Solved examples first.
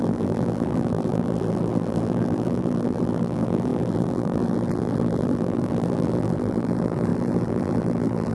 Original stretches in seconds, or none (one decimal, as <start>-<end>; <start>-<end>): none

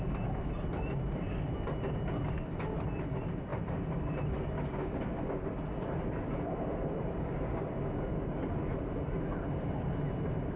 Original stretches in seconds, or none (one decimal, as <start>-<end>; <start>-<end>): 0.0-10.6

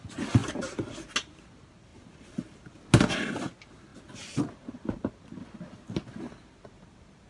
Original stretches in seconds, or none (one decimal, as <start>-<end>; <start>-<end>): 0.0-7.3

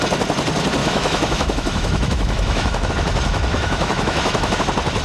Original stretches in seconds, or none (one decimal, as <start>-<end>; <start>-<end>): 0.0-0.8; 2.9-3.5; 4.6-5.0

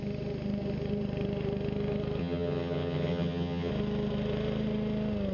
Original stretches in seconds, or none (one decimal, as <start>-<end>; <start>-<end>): 0.0-2.2; 3.7-5.3

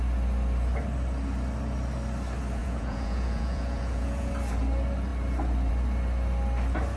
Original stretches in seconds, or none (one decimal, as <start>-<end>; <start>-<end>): 0.0-2.6; 4.3-7.0